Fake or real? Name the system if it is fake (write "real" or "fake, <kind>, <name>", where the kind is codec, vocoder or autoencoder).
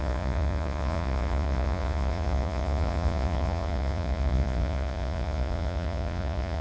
fake, vocoder, Vocos